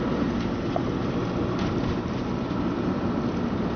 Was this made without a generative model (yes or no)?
yes